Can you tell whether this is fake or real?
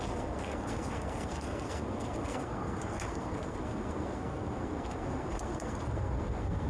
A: fake